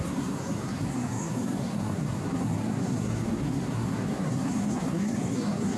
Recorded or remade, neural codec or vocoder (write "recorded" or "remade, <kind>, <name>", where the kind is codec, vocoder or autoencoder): remade, codec, SNAC